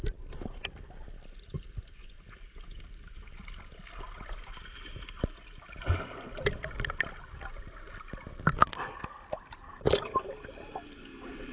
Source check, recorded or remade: recorded